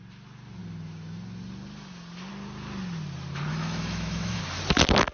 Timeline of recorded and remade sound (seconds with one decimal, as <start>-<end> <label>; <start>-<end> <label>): 0.0-3.5 recorded; 3.5-4.4 remade; 4.4-5.1 recorded